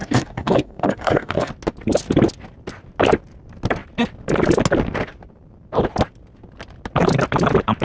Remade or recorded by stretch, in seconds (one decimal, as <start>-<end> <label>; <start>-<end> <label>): 0.0-1.5 remade; 1.5-7.8 recorded